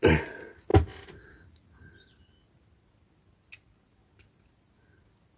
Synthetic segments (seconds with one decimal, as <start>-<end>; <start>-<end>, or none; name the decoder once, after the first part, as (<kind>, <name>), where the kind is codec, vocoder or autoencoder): none